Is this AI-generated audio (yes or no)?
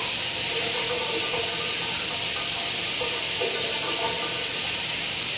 no